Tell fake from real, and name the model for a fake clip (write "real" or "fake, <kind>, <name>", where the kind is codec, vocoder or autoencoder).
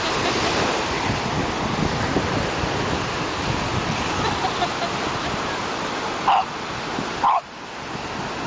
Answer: real